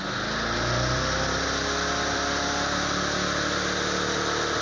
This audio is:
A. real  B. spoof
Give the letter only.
A